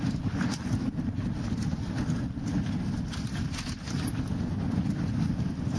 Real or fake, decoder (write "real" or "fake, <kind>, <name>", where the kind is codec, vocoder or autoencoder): real